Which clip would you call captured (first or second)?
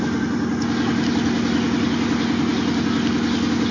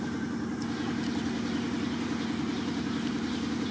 first